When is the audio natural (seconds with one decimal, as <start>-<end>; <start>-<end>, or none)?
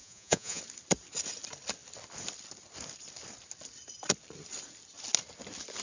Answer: 0.6-5.8